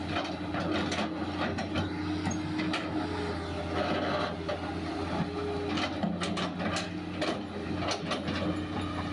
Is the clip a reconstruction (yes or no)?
no